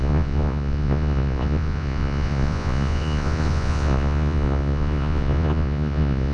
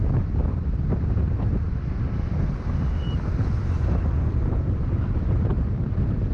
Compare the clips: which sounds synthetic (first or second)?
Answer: first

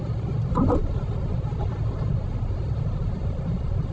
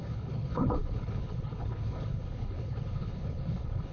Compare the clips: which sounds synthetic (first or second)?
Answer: second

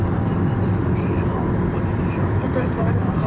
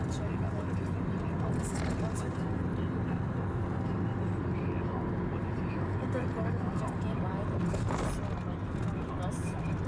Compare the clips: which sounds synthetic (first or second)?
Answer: first